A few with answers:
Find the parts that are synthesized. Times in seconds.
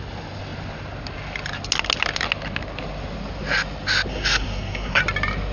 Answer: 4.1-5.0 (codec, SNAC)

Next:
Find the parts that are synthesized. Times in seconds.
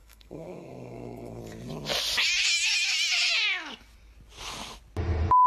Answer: 0.0-1.4 (codec, SNAC)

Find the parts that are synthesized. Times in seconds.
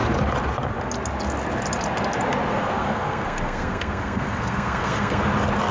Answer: 2.5-5.2 (codec, SNAC)